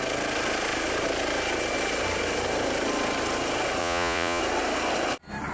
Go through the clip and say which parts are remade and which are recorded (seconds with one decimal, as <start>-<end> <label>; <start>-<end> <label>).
0.0-3.8 recorded; 3.8-4.4 remade; 4.4-5.5 recorded